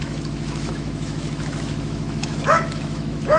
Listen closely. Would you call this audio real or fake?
fake